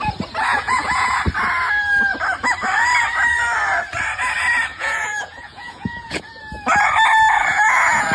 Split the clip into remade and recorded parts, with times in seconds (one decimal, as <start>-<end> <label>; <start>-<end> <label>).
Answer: 0.0-0.5 recorded; 0.5-1.2 remade; 1.2-4.7 recorded; 4.7-6.2 remade; 6.2-7.5 recorded; 7.5-8.1 remade